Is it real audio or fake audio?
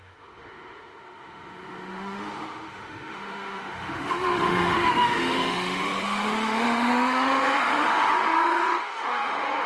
fake